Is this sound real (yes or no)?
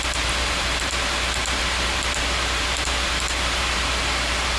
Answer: no